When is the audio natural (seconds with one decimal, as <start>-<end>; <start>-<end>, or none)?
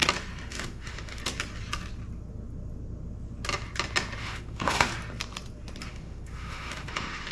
0.0-0.5; 1.2-4.2; 4.9-5.9